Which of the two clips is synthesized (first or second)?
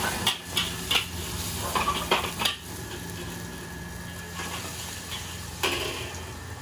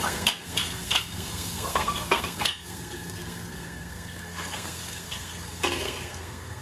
second